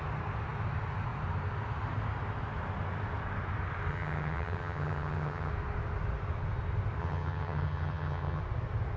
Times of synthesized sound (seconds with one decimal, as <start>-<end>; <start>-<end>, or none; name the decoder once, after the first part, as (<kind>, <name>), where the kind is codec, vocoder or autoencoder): 3.9-5.5 (vocoder, HiFi-GAN); 7.0-8.4